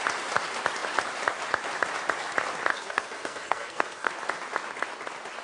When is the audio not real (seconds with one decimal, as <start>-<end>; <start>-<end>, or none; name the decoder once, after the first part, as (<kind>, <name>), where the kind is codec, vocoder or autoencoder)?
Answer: 2.7-4.1 (codec, SNAC)